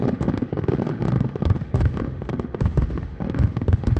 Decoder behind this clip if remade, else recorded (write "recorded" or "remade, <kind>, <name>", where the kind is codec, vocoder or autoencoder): remade, autoencoder, DAC-VAE